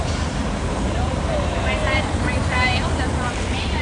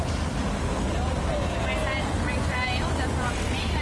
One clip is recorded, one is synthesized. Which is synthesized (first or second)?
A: first